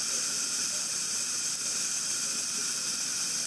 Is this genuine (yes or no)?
yes